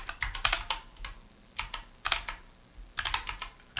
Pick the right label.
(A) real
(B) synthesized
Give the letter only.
A